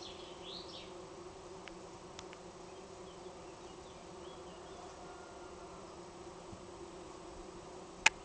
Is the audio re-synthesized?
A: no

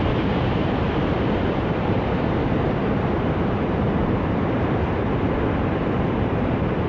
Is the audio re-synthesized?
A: yes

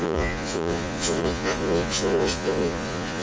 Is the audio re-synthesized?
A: yes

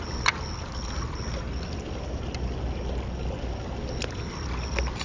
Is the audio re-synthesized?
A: no